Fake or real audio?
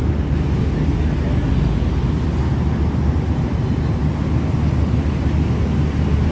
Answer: real